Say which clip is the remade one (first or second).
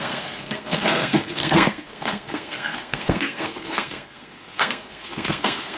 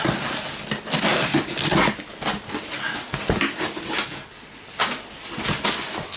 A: first